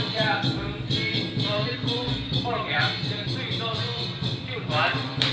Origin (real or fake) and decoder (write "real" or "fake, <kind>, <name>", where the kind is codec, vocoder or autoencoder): fake, vocoder, BigVGAN v2